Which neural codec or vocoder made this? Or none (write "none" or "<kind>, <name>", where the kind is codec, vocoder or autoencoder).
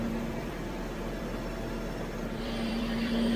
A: vocoder, BigVGAN v2